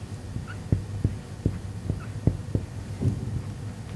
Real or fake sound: real